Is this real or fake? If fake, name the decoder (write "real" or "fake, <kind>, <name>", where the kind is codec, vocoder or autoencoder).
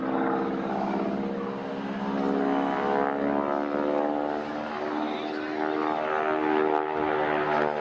real